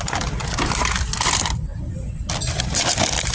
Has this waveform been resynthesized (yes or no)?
no